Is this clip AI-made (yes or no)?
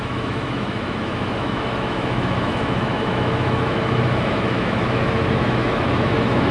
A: yes